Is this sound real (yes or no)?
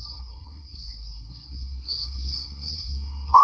no